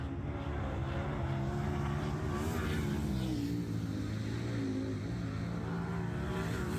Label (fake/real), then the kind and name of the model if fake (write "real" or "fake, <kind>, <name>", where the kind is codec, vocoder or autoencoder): real